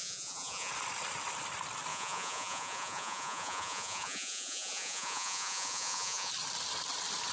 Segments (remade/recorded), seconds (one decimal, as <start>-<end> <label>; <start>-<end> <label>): 0.0-0.7 remade; 0.7-1.9 recorded; 1.9-6.3 remade; 6.3-7.3 recorded